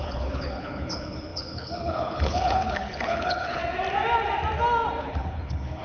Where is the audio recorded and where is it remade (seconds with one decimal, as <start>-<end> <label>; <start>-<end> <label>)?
0.0-3.6 remade; 3.6-5.0 recorded; 5.0-5.8 remade